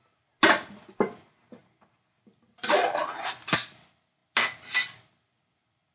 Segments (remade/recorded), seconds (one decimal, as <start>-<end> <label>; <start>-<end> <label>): 0.0-5.9 recorded